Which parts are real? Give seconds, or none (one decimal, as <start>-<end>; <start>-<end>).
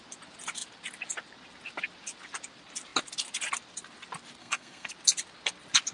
0.0-4.4; 4.9-5.9